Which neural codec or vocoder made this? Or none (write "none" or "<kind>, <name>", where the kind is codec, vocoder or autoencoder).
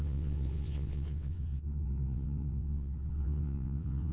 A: vocoder, WaveNeXt